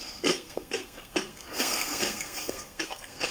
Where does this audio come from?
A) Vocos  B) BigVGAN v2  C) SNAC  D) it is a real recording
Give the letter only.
C